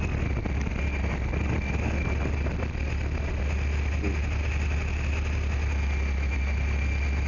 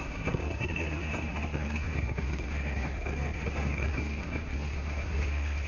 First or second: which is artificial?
second